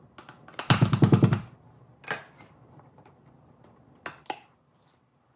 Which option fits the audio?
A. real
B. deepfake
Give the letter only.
A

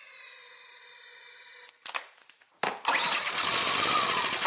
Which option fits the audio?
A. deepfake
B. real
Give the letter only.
B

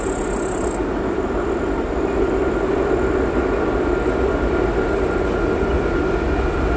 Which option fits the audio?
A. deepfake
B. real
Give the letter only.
B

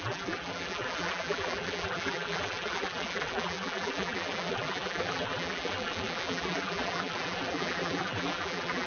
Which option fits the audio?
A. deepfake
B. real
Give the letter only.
A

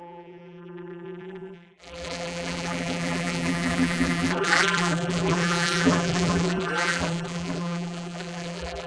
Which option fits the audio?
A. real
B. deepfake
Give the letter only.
B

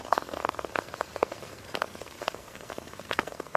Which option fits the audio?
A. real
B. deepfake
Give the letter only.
B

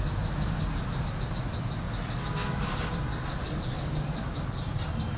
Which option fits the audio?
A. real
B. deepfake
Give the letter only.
A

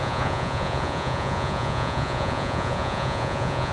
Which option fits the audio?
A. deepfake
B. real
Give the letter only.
A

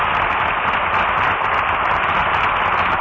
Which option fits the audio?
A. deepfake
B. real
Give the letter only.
B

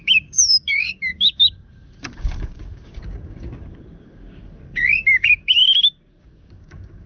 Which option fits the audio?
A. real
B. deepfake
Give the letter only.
B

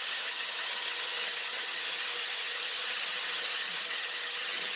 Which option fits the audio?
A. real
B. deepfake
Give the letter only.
B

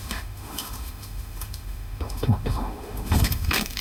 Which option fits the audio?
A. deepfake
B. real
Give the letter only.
A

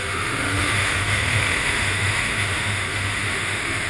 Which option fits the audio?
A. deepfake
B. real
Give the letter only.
A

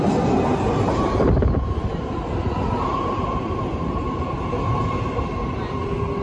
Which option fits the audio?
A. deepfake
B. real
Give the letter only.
B